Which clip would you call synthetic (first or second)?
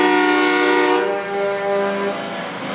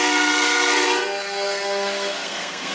second